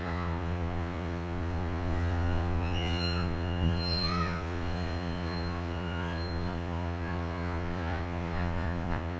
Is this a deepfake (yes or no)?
yes